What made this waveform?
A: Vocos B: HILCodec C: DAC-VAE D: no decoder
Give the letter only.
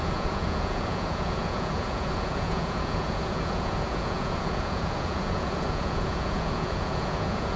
A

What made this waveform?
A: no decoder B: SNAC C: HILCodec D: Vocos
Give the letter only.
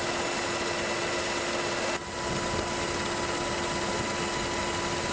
A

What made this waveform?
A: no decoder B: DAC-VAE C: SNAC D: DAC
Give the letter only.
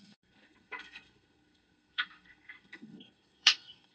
C